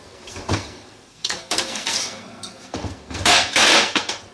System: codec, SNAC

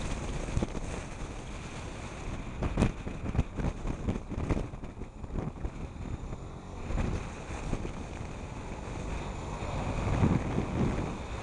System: none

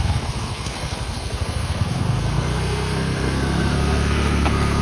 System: codec, SNAC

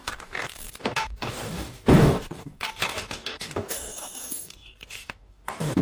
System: codec, DAC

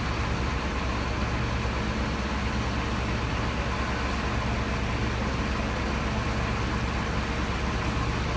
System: none